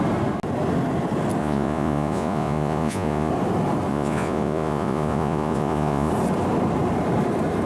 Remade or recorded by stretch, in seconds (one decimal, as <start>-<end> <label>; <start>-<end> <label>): 0.0-1.4 recorded; 1.4-3.3 remade; 3.3-3.9 recorded; 3.9-6.1 remade; 6.1-7.7 recorded